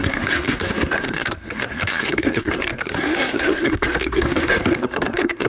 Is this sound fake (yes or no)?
yes